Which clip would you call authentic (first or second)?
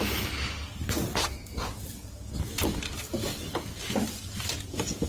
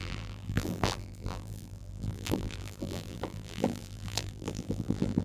first